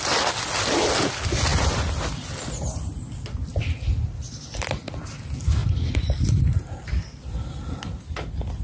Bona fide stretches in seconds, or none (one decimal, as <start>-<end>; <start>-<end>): 0.0-8.6

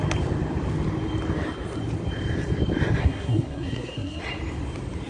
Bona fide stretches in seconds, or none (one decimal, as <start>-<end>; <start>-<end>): 0.0-3.0; 4.2-5.1

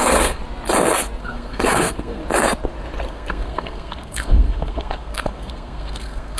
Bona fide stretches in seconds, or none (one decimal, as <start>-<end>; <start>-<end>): 0.4-1.2; 2.2-3.1

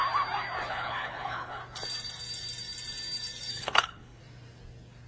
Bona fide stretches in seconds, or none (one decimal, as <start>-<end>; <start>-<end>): 0.0-0.7; 1.6-3.5; 4.2-5.1

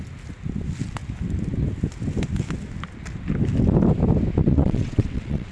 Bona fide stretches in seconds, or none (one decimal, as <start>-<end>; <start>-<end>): 0.0-4.4

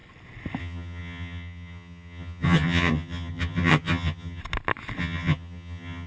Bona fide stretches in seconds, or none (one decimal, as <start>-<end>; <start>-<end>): 0.0-0.6; 4.4-5.0

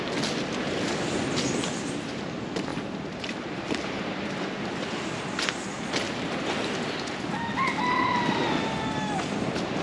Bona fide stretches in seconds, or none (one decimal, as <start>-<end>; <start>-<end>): 0.0-2.7; 4.0-9.8